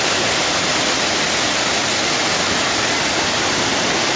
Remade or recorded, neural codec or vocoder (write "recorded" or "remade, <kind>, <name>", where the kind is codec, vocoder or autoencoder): recorded